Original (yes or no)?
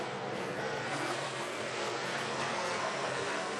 no